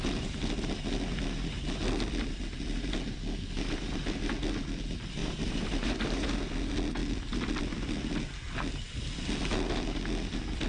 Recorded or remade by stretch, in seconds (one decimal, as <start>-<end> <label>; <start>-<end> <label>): 0.0-5.2 recorded; 5.2-6.4 remade; 6.4-10.7 recorded